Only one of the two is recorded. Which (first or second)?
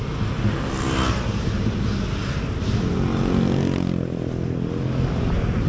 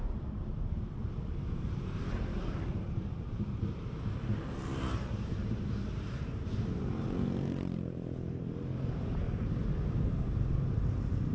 first